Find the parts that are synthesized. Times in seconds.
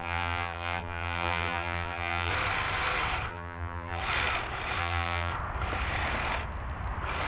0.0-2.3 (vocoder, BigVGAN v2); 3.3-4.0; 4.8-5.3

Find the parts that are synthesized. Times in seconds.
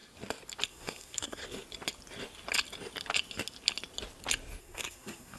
0.7-1.4 (codec, SNAC); 4.6-5.4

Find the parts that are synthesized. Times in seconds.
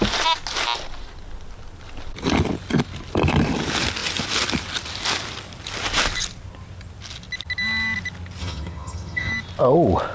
8.4-9.3 (vocoder, HiFi-GAN)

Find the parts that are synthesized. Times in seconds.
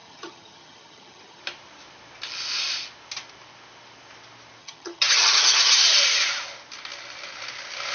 0.0-1.4 (vocoder, HiFi-GAN); 4.6-5.8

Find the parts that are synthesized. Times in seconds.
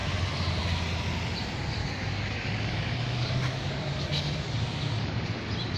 1.8-5.3 (codec, DAC)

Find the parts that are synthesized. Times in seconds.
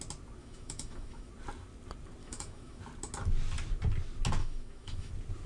0.4-1.3 (autoencoder, DAC-VAE); 2.2-2.8; 4.4-5.1